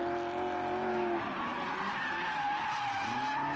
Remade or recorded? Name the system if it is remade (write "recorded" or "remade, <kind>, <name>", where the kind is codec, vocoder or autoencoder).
recorded